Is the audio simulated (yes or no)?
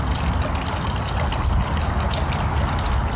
no